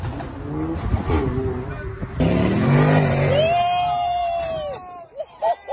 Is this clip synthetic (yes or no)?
no